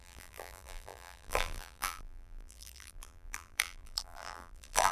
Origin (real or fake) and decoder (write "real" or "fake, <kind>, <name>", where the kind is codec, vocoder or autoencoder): fake, vocoder, BigVGAN v2